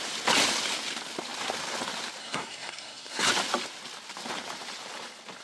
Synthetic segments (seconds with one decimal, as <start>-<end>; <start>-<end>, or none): 2.2-3.3